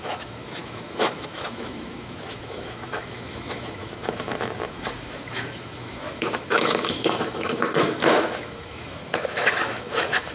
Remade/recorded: remade